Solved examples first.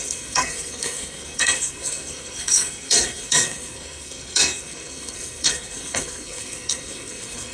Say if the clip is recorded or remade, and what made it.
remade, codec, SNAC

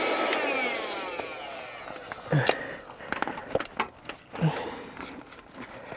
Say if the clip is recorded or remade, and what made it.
recorded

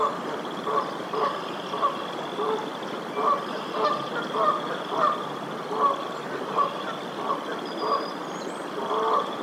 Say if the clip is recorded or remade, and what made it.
recorded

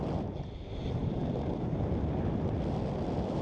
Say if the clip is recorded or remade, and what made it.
recorded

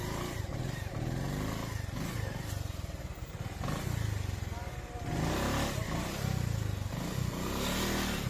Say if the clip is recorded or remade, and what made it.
recorded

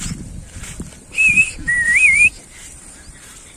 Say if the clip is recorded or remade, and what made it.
remade, vocoder, BigVGAN v2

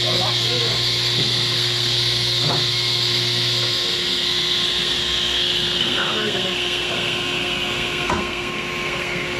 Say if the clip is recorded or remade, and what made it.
remade, codec, SNAC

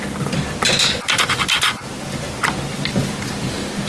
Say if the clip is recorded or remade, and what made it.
recorded